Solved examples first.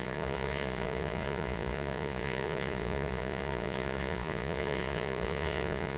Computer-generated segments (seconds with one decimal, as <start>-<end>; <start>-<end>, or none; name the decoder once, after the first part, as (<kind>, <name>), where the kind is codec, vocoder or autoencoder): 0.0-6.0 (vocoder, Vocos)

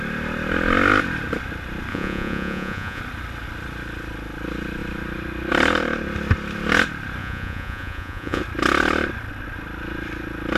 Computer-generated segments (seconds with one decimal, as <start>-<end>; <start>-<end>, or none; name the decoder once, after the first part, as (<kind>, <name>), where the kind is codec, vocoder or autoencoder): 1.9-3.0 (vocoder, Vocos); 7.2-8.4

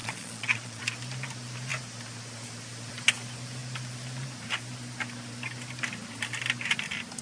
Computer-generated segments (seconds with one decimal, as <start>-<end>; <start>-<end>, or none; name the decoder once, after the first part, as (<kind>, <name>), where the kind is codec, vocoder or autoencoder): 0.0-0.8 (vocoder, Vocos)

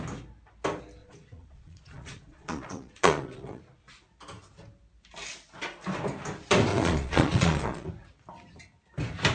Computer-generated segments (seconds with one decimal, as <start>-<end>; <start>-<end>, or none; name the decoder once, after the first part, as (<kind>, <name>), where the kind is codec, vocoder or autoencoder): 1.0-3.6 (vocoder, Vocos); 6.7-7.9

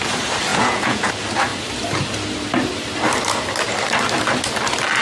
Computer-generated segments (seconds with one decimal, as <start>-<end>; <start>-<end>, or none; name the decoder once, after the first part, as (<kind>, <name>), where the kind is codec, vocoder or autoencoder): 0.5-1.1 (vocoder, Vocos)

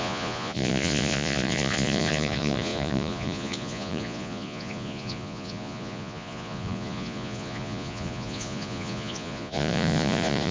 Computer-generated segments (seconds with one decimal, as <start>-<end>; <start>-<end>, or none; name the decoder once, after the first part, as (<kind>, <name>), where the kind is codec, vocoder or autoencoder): 0.0-10.5 (vocoder, Vocos)

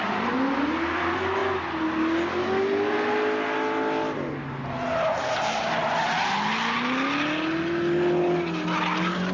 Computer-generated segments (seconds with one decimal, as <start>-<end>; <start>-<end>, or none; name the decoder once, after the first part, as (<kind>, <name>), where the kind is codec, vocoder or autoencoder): none